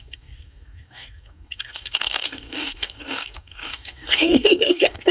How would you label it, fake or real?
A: fake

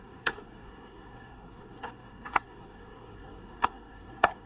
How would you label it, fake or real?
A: fake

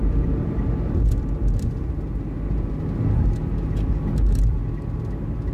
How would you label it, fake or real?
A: real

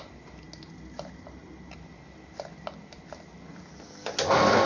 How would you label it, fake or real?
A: real